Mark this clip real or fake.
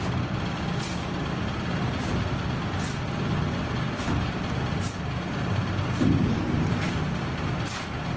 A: real